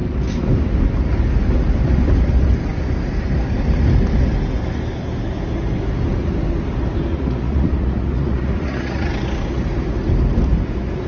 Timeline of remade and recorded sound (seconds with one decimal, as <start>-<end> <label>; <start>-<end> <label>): 0.0-7.1 recorded; 7.1-9.1 remade; 9.1-11.1 recorded